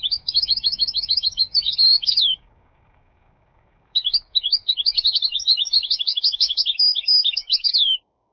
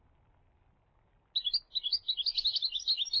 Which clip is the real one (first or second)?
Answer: second